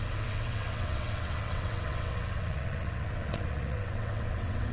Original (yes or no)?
no